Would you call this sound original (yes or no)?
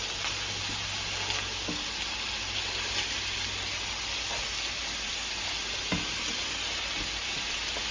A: yes